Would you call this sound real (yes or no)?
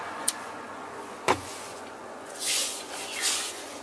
no